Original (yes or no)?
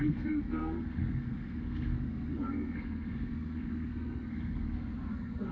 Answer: no